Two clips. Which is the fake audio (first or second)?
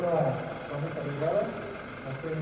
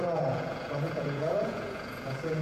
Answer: second